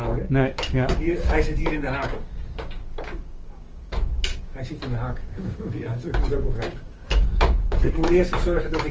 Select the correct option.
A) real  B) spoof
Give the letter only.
B